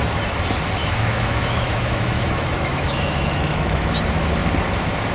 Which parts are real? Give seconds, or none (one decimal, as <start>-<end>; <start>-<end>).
0.0-0.8; 3.9-5.1